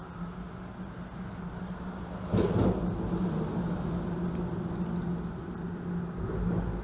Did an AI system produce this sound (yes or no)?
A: no